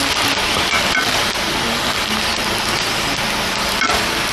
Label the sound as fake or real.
real